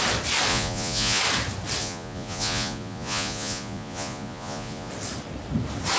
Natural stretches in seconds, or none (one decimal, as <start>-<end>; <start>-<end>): 0.0-0.5; 1.2-1.8; 4.9-6.0